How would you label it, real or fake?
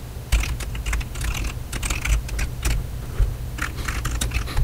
real